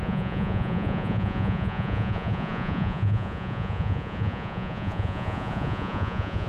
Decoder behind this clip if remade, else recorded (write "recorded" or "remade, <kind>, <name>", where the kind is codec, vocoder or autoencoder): remade, vocoder, Vocos